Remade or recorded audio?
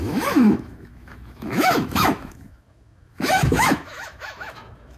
remade